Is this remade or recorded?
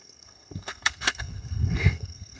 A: remade